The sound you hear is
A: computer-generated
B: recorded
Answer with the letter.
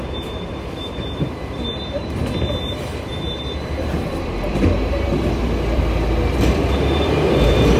A